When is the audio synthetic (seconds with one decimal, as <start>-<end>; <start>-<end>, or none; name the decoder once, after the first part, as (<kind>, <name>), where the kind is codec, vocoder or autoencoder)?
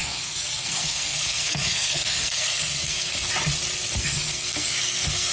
0.0-3.3 (codec, SNAC); 4.0-5.3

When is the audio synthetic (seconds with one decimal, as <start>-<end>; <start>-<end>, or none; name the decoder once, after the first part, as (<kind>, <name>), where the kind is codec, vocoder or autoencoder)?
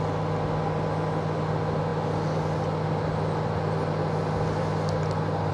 none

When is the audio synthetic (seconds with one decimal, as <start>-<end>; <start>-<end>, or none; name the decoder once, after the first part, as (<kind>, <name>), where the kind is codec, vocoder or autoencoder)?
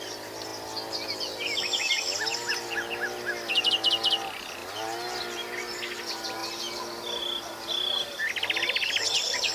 none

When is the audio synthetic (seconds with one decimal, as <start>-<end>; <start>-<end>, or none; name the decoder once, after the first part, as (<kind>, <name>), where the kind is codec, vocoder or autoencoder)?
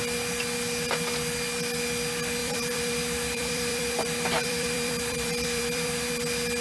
2.4-6.1 (vocoder, BigVGAN v2)